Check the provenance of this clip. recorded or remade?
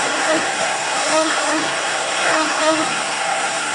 remade